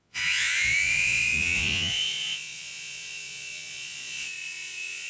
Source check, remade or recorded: remade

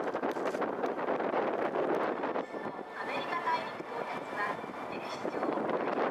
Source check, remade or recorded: recorded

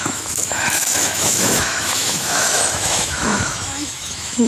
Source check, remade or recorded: remade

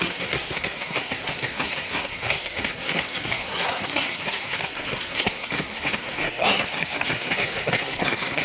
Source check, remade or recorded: remade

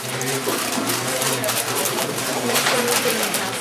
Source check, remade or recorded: remade